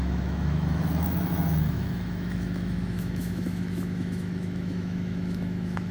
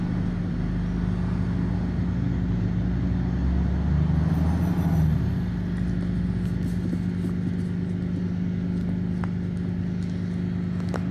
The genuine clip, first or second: second